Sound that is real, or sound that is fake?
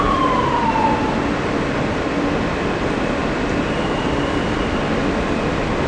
real